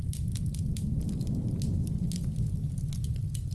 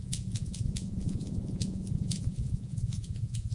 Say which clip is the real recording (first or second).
first